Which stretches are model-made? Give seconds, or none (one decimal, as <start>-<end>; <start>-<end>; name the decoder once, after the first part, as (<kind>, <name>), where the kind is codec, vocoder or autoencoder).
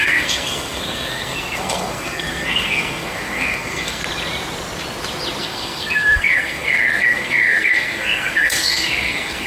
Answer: 0.0-4.0 (codec, SNAC); 5.4-9.5